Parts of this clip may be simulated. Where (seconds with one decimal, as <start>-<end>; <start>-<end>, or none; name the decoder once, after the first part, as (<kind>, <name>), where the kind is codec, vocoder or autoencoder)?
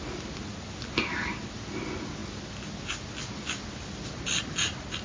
none